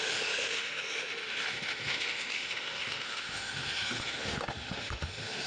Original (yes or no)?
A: no